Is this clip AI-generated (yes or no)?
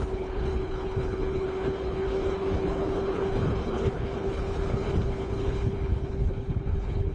yes